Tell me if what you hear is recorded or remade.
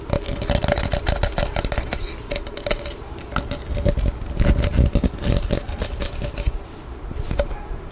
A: recorded